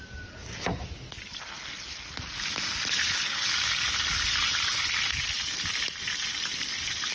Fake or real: real